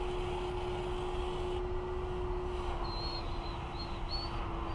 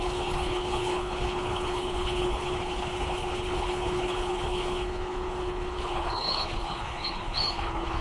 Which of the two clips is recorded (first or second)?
first